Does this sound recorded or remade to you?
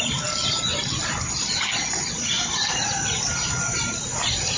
recorded